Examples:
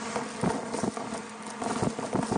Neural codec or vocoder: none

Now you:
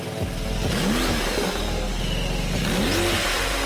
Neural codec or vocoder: none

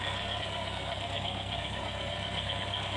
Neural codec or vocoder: codec, SNAC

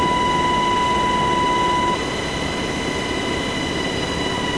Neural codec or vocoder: none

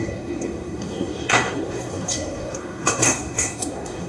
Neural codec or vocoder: codec, SNAC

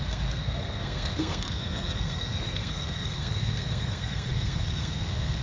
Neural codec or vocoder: codec, SNAC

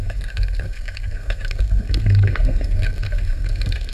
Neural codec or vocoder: codec, SNAC